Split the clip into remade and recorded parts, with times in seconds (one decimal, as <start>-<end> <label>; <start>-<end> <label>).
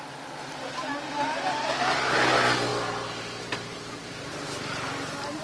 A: 0.0-5.4 recorded